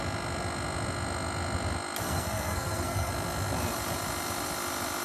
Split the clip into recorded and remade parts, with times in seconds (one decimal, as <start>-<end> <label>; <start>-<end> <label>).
0.0-2.0 recorded; 2.0-3.1 remade; 3.1-5.0 recorded